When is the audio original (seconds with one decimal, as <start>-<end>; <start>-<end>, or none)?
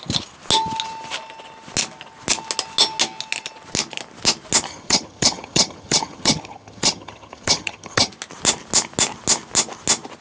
0.0-4.7; 8.1-10.2